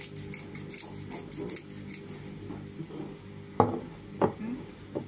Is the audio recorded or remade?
recorded